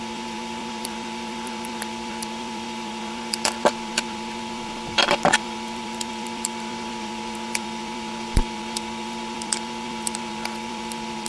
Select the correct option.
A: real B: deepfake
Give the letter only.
B